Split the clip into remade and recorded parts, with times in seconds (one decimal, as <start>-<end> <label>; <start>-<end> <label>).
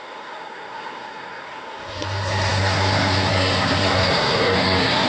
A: 0.0-5.1 remade